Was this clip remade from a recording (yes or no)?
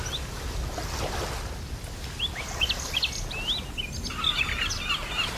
no